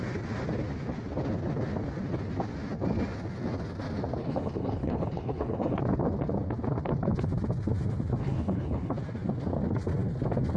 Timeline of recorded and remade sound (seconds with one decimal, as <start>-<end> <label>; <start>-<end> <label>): 0.0-4.2 recorded; 4.2-5.8 remade; 5.8-8.2 recorded; 8.2-8.9 remade; 8.9-10.6 recorded